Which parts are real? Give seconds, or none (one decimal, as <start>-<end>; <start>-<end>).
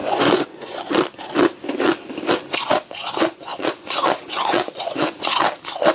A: 1.0-3.5; 5.4-5.9